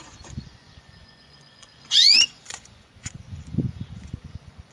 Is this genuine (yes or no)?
no